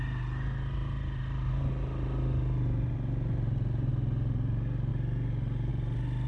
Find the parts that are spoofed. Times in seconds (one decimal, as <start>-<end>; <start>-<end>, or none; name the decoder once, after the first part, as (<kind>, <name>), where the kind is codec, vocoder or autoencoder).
none